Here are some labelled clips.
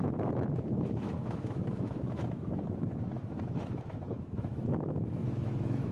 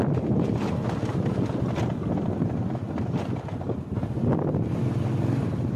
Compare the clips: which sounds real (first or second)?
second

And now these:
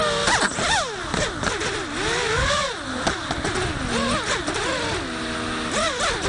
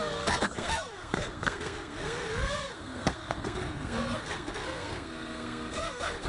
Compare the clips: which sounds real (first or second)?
first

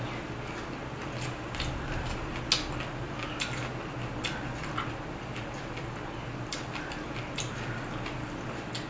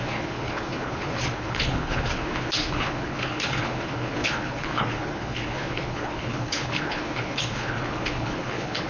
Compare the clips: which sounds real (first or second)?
first